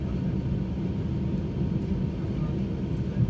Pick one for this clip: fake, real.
real